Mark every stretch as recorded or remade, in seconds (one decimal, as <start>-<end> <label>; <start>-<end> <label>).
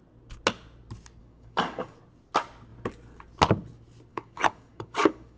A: 0.0-1.2 recorded; 1.2-2.0 remade; 2.0-4.1 recorded; 4.1-5.4 remade